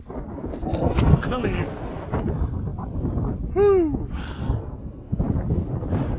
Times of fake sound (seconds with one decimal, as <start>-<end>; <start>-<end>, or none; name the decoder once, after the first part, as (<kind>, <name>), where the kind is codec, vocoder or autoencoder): 0.6-1.6 (codec, SNAC); 4.4-5.2